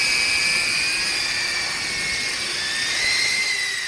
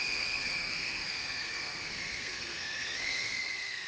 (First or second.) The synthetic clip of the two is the second